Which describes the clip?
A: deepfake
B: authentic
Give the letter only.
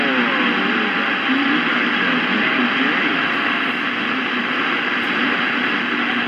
B